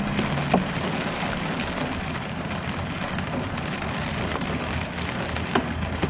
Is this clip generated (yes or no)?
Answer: no